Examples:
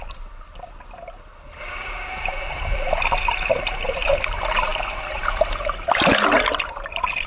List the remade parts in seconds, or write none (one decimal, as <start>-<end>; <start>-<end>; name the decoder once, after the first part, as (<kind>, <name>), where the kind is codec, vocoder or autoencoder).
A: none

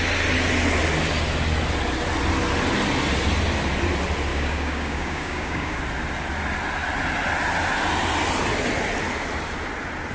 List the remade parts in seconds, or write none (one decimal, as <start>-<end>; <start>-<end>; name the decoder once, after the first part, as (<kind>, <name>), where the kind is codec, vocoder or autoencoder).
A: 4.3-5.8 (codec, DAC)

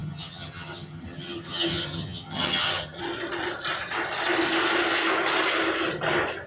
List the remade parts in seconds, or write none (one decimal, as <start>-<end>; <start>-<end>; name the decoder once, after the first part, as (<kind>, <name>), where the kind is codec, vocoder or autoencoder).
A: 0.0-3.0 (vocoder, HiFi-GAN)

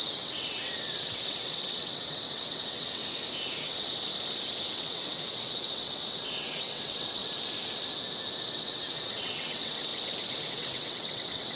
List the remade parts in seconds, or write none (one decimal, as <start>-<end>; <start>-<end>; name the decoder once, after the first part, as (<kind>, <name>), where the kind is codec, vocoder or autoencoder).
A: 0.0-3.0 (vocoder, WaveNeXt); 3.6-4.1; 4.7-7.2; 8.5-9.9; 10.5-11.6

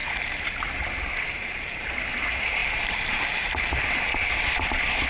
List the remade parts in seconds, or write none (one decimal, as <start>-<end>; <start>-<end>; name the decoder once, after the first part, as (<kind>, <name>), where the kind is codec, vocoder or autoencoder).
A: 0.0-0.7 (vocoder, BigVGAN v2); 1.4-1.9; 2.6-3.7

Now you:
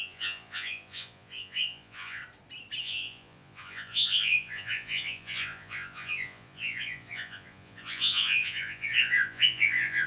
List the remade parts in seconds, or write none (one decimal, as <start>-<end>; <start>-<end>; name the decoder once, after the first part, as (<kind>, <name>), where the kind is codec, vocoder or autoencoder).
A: 0.0-2.2 (vocoder, Vocos); 2.8-10.1